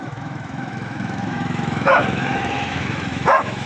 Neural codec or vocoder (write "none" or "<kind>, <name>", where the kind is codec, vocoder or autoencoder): autoencoder, DAC-VAE